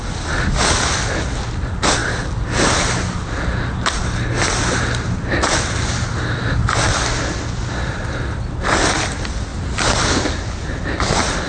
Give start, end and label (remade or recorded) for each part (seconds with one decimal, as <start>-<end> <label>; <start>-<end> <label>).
0.0-11.5 recorded